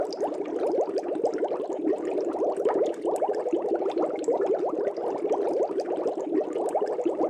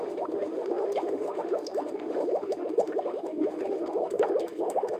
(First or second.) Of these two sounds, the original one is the first